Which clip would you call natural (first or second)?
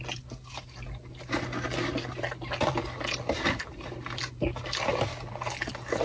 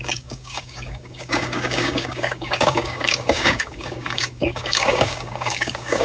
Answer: first